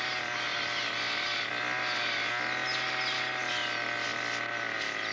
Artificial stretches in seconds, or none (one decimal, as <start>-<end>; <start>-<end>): none